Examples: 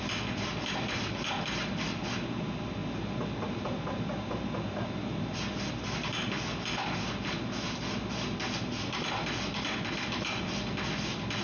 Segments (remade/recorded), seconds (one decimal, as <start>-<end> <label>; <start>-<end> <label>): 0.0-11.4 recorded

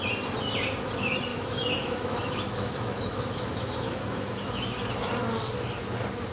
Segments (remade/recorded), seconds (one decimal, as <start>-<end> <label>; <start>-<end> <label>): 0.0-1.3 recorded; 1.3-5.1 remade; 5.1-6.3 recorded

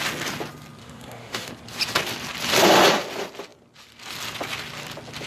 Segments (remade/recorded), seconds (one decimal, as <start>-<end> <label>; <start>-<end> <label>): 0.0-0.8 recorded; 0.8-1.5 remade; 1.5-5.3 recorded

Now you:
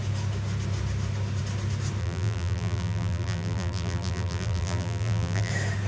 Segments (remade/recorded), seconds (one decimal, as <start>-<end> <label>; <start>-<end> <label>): 0.0-2.0 recorded; 2.0-5.5 remade; 5.5-5.9 recorded

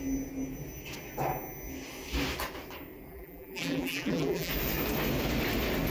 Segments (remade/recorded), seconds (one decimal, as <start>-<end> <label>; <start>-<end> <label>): 0.0-3.1 recorded; 3.1-4.5 remade; 4.5-5.9 recorded